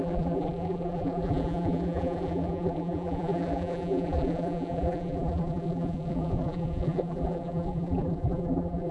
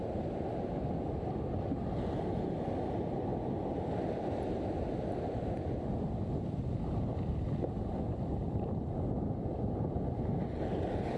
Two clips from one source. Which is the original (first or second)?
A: second